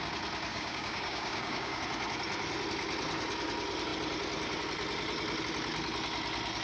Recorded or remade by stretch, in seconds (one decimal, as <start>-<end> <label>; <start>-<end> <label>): 0.0-0.5 recorded; 0.5-1.8 remade; 1.8-6.6 recorded